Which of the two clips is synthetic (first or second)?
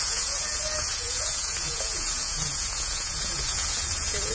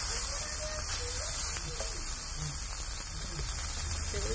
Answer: first